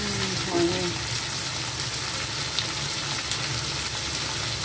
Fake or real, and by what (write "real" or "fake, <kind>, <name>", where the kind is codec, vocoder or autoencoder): real